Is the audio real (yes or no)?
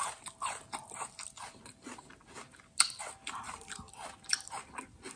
yes